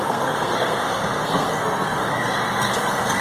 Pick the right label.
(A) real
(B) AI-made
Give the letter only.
B